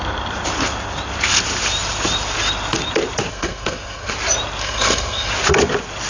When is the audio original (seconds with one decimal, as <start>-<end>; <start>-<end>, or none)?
0.0-3.3; 4.1-4.6; 5.3-6.1